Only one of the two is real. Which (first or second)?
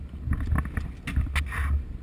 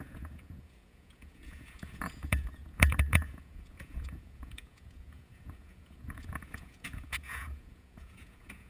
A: first